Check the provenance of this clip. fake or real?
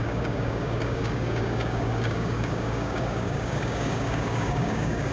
fake